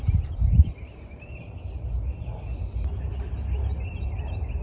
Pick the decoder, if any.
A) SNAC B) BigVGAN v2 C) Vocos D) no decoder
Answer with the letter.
D